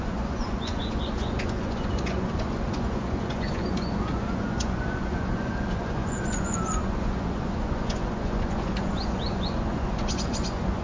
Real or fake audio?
fake